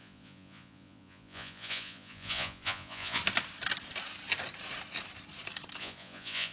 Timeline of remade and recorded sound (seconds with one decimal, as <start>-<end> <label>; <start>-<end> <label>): 0.0-3.2 remade; 3.2-5.8 recorded; 5.8-6.5 remade